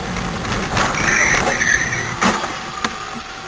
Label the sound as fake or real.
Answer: real